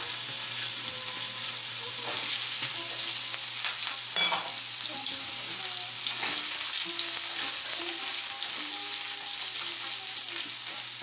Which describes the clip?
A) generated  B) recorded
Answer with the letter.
B